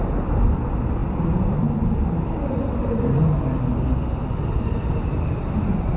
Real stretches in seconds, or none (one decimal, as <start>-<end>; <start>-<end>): 0.0-6.0